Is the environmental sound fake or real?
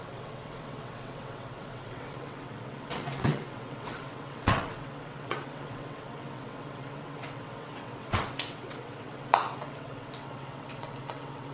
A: fake